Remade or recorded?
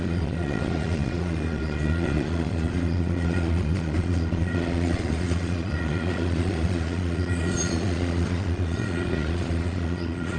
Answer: remade